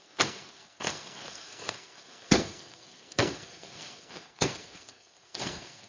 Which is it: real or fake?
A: fake